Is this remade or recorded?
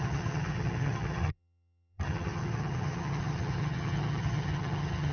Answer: remade